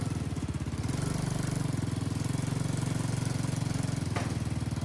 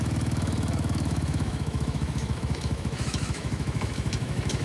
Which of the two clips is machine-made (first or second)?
second